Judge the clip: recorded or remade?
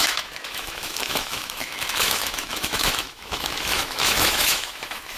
remade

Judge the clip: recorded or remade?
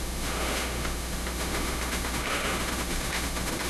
remade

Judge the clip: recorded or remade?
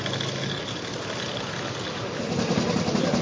recorded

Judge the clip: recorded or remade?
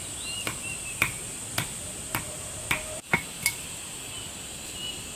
recorded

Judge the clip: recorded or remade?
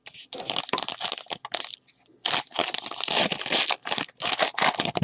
recorded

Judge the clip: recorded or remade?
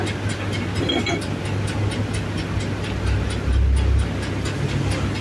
recorded